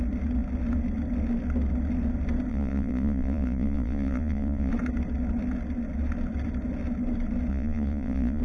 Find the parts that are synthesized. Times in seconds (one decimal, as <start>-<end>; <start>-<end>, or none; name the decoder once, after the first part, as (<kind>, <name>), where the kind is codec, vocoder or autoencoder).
2.5-4.7 (vocoder, Vocos); 7.5-8.4

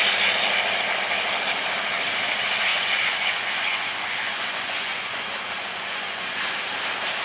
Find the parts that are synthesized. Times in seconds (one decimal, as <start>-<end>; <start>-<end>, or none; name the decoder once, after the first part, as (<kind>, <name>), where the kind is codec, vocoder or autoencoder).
2.7-6.4 (vocoder, Vocos)

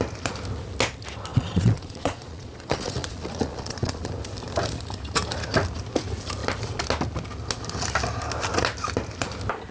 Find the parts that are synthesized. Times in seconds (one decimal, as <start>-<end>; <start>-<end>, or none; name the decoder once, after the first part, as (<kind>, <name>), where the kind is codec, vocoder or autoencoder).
1.3-4.1 (vocoder, Vocos)

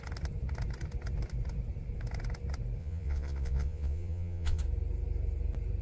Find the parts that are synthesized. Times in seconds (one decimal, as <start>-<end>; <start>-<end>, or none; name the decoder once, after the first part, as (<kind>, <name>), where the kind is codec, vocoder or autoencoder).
2.8-4.6 (vocoder, Vocos)

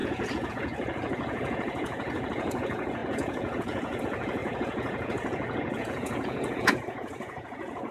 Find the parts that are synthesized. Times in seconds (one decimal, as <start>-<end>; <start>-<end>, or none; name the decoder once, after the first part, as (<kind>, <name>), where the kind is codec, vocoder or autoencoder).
0.0-7.9 (vocoder, Vocos)

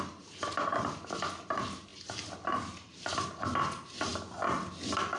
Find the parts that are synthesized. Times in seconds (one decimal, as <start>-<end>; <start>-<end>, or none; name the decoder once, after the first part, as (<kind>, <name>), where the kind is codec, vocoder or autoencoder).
none